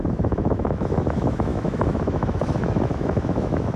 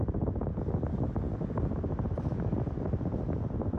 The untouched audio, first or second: second